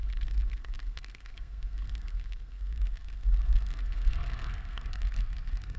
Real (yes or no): no